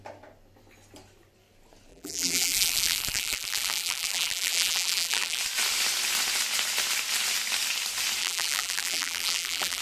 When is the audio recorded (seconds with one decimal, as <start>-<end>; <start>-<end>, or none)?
0.0-1.9; 5.4-8.2